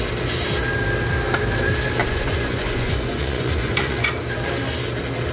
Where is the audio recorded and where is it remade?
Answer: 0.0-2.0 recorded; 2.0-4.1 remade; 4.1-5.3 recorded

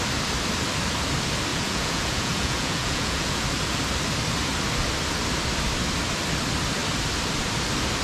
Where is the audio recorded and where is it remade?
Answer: 0.0-1.5 recorded; 1.5-3.4 remade; 3.4-8.0 recorded

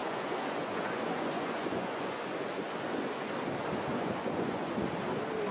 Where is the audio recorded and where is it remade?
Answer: 0.0-3.3 remade; 3.3-3.9 recorded; 3.9-4.7 remade; 4.7-5.5 recorded

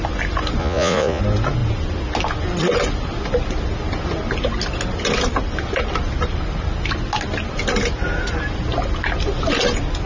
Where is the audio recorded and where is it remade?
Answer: 0.0-0.6 recorded; 0.6-1.2 remade; 1.2-10.1 recorded

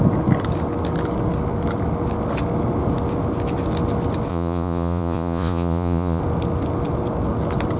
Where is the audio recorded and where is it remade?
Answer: 0.0-4.3 recorded; 4.3-6.2 remade; 6.2-7.8 recorded

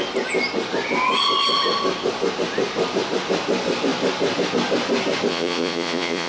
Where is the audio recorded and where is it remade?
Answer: 0.0-5.3 recorded; 5.3-6.3 remade

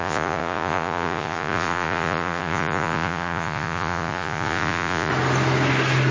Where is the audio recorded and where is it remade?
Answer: 0.0-5.1 remade; 5.1-6.1 recorded

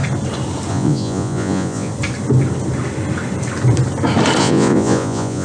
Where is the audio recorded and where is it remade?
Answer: 0.0-0.7 recorded; 0.7-1.9 remade; 1.9-4.4 recorded; 4.4-5.4 remade